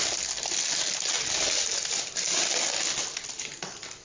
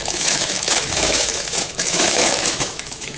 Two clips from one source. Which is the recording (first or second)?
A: first